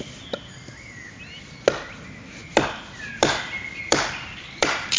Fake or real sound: real